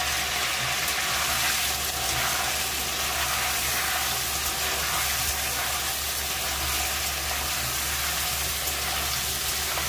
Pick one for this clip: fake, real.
real